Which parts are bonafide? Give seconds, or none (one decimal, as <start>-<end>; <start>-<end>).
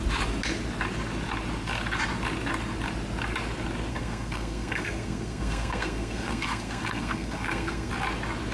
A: 0.0-3.9; 7.9-8.5